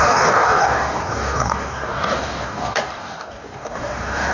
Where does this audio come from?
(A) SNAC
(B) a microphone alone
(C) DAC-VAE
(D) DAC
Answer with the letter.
D